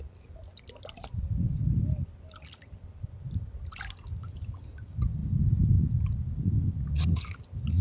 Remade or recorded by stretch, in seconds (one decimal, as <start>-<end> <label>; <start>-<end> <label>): 0.0-7.8 recorded